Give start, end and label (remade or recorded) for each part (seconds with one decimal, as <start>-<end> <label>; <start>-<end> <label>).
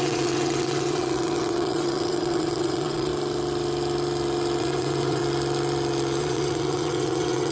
0.0-3.1 remade; 3.1-4.6 recorded; 4.6-5.2 remade; 5.2-6.2 recorded; 6.2-7.5 remade